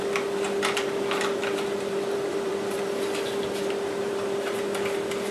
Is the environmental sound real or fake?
fake